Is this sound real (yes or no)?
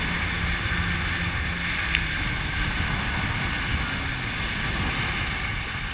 yes